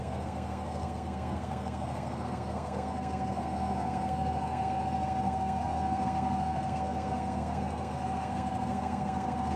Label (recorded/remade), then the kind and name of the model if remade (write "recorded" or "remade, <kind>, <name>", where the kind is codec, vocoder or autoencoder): remade, codec, SNAC